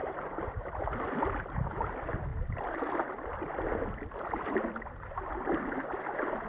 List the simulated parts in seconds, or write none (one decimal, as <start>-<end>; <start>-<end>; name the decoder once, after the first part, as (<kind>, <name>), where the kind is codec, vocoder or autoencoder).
0.0-0.8 (vocoder, BigVGAN v2)